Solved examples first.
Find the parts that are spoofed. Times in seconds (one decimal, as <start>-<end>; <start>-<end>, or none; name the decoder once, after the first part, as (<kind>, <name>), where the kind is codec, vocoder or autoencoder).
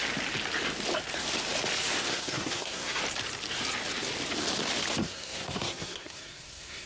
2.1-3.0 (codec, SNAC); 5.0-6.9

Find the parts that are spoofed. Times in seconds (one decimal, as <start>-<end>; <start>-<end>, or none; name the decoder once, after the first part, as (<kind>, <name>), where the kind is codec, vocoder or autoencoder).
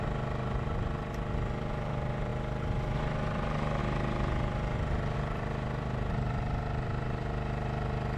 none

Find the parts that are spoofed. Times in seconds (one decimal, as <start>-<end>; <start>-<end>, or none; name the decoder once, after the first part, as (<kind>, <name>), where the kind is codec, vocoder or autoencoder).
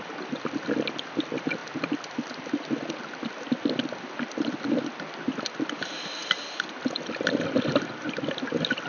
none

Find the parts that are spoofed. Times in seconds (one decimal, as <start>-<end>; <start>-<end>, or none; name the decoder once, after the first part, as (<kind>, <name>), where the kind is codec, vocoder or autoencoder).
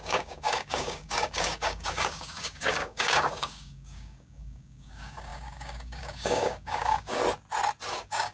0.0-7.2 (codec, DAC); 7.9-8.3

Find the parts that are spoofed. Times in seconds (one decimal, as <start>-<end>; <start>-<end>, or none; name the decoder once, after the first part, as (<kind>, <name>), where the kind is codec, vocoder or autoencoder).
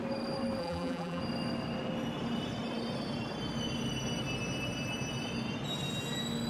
0.6-1.2 (vocoder, BigVGAN v2)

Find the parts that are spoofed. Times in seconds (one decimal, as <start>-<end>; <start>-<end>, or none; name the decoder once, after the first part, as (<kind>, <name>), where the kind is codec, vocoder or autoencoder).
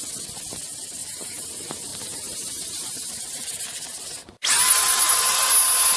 1.0-1.5 (vocoder, BigVGAN v2); 1.9-5.5